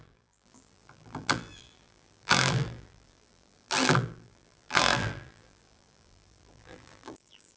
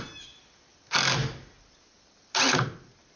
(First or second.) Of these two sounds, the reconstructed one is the first